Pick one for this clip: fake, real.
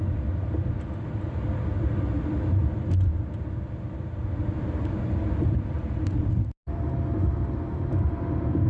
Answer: real